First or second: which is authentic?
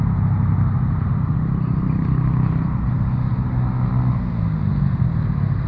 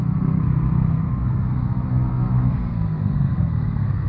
first